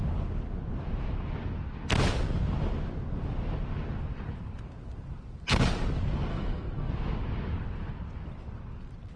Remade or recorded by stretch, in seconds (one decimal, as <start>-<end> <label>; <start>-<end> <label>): 0.0-6.3 recorded; 6.3-6.9 remade; 6.9-9.2 recorded